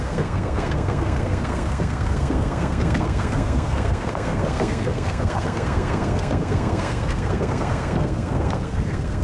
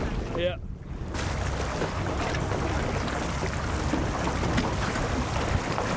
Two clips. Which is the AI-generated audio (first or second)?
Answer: first